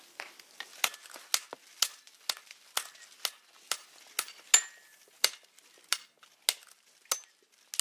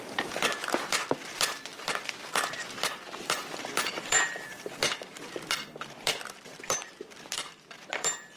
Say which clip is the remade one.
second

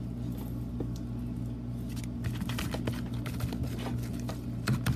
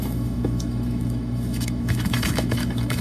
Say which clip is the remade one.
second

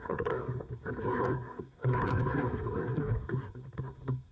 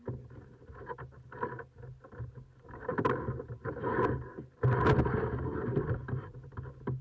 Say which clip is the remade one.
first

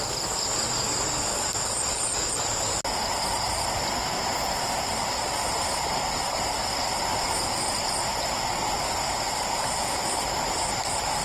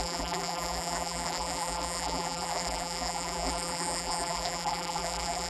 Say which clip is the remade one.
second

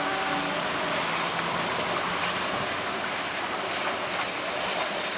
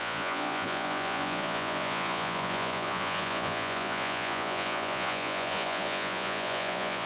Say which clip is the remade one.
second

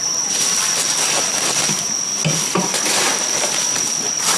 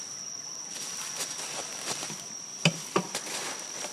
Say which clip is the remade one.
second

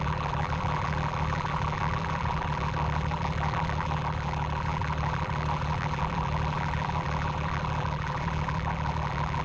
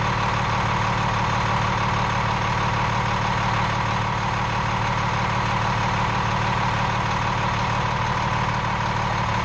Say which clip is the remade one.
first